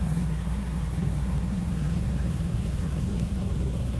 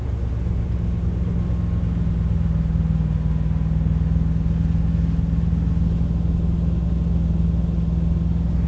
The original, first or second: second